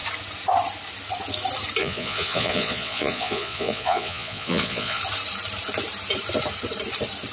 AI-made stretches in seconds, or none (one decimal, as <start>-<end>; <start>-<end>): 1.8-5.0